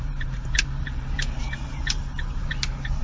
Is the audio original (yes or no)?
no